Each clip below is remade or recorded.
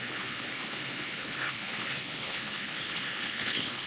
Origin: remade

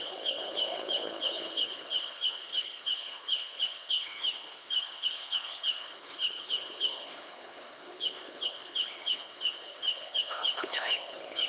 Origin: remade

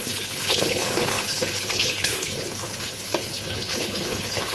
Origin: remade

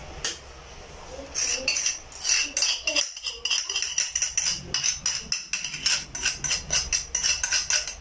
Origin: recorded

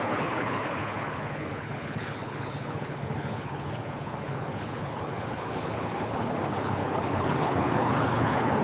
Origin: remade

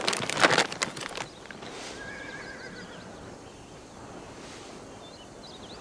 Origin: recorded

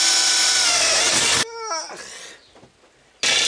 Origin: recorded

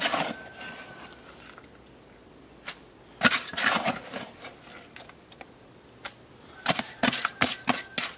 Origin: recorded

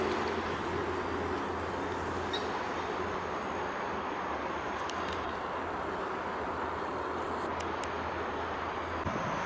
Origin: recorded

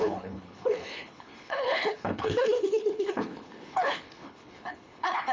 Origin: remade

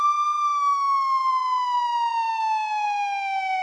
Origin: recorded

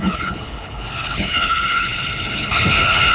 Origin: remade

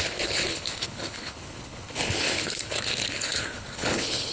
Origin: remade